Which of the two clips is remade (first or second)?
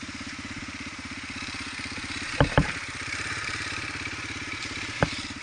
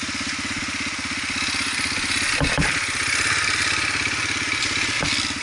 first